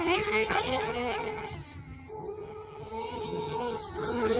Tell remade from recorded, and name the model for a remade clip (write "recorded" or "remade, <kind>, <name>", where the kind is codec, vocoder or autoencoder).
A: remade, vocoder, HiFi-GAN